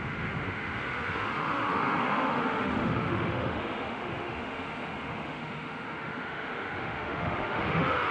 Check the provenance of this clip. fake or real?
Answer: fake